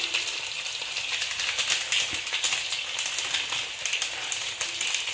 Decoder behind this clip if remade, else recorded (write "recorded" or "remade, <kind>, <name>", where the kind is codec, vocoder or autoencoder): recorded